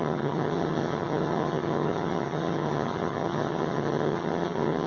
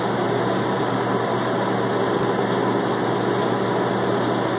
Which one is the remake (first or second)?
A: first